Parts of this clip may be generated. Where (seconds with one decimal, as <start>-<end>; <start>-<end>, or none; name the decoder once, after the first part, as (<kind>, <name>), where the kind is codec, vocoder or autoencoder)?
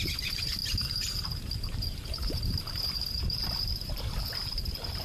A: 0.0-5.0 (vocoder, BigVGAN v2)